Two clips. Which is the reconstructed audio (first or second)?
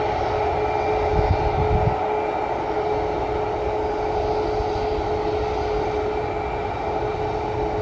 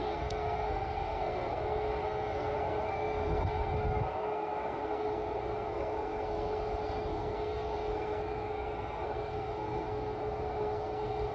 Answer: second